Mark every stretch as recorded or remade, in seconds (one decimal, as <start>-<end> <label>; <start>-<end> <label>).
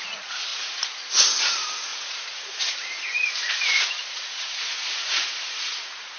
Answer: 0.0-6.2 remade